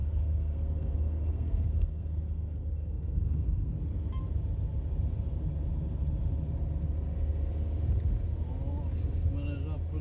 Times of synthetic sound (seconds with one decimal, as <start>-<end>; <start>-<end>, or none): 0.0-3.7